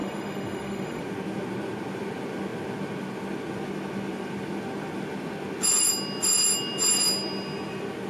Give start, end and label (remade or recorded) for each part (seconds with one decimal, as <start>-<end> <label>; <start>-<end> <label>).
0.0-1.0 remade; 1.0-8.1 recorded